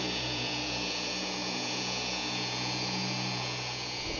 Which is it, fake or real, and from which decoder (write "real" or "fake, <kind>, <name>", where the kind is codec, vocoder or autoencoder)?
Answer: fake, vocoder, Vocos